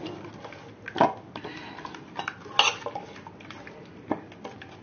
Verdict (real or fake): real